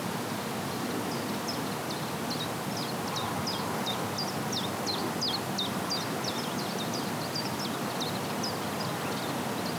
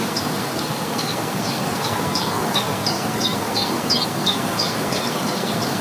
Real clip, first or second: first